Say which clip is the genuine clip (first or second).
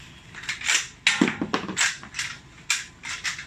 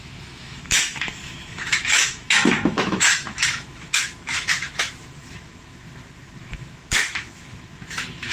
first